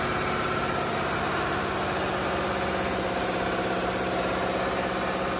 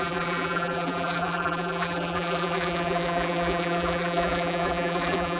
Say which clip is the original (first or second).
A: first